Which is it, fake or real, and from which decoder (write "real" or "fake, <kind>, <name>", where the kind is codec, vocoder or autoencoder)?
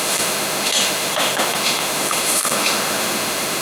fake, autoencoder, DAC-VAE